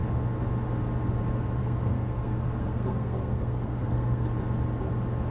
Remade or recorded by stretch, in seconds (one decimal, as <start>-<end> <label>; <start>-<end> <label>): 0.0-1.6 recorded; 1.6-4.3 remade; 4.3-5.3 recorded